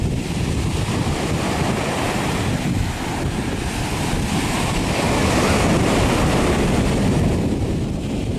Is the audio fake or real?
real